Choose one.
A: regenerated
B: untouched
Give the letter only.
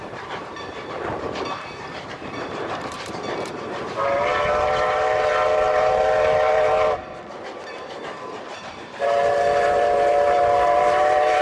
A